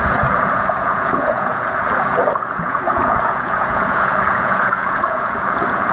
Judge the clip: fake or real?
fake